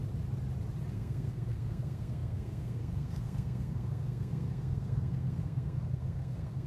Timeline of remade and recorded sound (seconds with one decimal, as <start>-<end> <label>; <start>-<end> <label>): 0.0-0.9 recorded; 0.9-6.7 remade

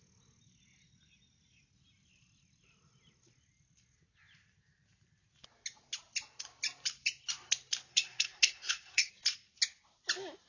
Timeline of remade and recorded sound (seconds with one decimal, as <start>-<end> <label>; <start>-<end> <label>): 0.0-7.9 recorded; 7.9-9.1 remade; 9.1-10.5 recorded

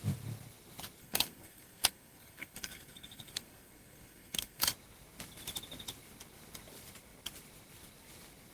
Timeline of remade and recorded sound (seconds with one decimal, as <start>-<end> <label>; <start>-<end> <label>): 0.0-1.0 recorded; 1.0-4.7 remade; 4.7-8.5 recorded

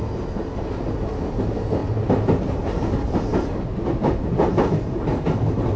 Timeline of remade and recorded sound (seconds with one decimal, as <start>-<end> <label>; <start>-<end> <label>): 0.0-5.8 recorded